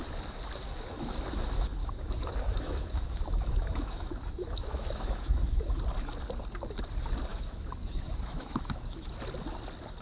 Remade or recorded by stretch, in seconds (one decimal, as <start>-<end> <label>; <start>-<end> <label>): 0.0-1.8 recorded; 1.8-5.8 remade; 5.8-7.3 recorded; 7.3-9.2 remade; 9.2-10.0 recorded